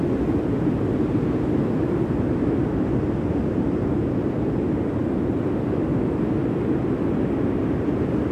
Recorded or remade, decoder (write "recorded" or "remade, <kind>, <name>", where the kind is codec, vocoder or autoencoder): recorded